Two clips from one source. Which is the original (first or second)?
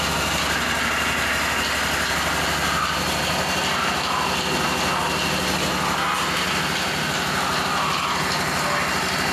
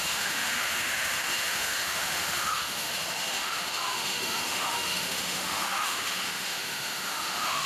first